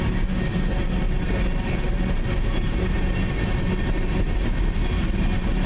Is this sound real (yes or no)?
yes